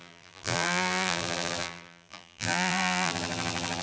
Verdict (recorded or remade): remade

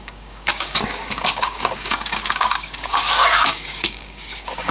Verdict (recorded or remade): remade